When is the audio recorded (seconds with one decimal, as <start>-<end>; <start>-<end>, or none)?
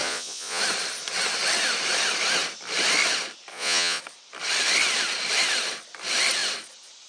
0.6-3.5; 4.0-7.1